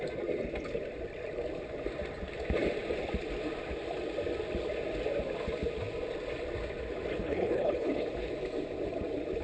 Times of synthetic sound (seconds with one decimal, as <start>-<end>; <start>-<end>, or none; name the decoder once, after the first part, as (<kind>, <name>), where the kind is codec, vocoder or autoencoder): 7.1-8.3 (codec, HILCodec)